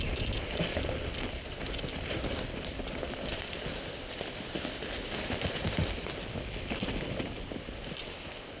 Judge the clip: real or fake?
real